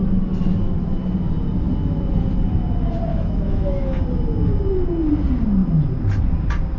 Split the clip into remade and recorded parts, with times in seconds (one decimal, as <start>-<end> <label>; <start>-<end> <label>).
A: 0.0-3.1 recorded; 3.1-4.0 remade; 4.0-6.8 recorded